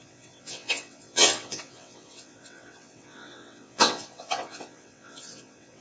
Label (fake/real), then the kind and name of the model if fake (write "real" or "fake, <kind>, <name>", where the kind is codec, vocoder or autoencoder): fake, vocoder, WaveNeXt